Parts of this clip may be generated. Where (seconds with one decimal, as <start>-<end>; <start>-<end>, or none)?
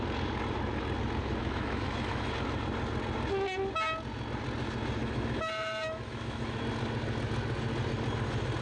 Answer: 1.4-2.3; 5.0-6.6